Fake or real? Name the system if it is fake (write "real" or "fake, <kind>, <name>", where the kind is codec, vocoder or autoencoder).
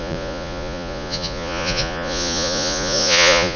fake, vocoder, Vocos